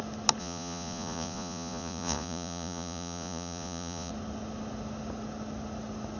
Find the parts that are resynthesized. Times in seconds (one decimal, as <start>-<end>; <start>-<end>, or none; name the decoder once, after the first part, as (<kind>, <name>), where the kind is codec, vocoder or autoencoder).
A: 0.4-4.1 (vocoder, Vocos)